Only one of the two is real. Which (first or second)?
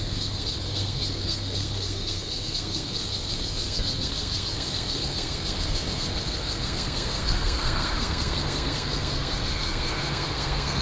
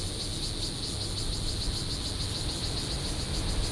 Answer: second